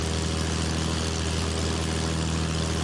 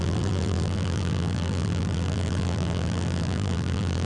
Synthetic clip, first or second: second